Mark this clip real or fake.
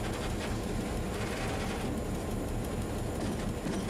real